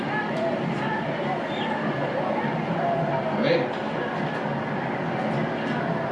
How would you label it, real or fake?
real